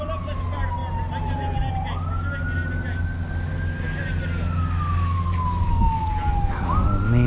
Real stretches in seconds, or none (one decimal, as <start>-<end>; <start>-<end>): 0.0-7.3